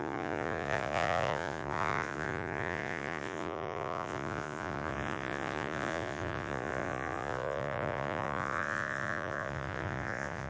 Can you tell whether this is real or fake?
fake